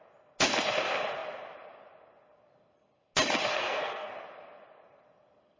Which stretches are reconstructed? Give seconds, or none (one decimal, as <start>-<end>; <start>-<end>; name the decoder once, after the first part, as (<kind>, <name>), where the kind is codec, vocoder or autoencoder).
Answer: 3.5-4.1 (codec, SNAC)